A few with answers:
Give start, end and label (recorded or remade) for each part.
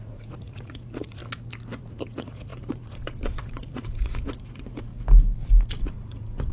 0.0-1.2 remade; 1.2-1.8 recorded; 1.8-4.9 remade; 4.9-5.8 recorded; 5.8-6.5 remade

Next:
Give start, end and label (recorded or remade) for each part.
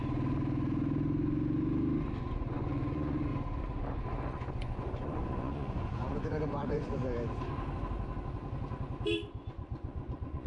0.0-2.2 recorded; 2.2-3.3 remade; 3.3-4.3 recorded; 4.3-7.0 remade; 7.0-9.5 recorded; 9.5-10.5 remade